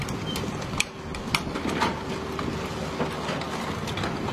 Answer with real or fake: real